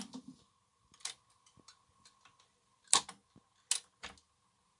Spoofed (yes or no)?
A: no